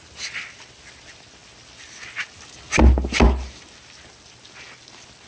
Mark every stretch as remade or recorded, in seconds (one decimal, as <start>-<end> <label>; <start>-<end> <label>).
0.0-5.3 recorded